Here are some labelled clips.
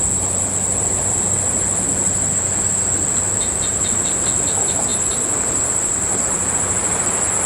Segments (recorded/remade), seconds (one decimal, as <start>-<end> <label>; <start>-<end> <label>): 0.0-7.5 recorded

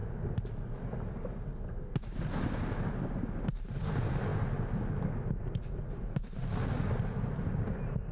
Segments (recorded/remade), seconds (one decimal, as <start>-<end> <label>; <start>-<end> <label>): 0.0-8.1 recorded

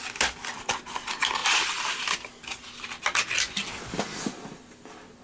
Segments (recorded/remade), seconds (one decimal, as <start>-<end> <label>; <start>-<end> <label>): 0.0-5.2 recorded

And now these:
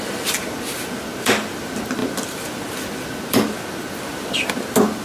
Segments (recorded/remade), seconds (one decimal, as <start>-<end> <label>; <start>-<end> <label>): 0.0-5.0 recorded

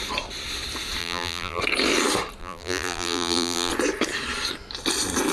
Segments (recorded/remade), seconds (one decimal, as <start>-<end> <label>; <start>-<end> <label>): 0.0-1.0 recorded; 1.0-1.6 remade; 1.6-2.4 recorded; 2.4-3.7 remade; 3.7-5.3 recorded

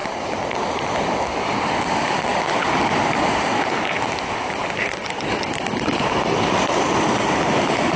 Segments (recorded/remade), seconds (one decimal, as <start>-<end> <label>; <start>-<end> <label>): 0.0-1.4 recorded; 1.4-2.3 remade; 2.3-4.5 recorded; 4.5-8.0 remade

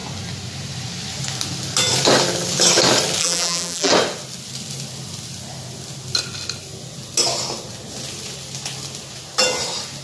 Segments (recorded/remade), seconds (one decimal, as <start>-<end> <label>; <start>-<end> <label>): 0.0-3.2 recorded; 3.2-3.9 remade; 3.9-10.0 recorded

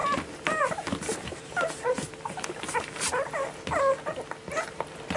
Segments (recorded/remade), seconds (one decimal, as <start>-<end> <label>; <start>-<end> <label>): 0.0-3.1 remade; 3.1-5.2 recorded